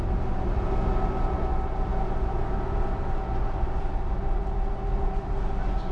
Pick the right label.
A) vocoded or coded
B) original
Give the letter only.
B